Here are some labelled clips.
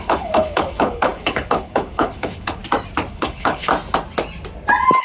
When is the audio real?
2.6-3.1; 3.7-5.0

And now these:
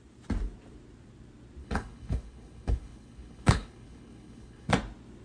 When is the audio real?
0.0-1.6; 4.7-5.2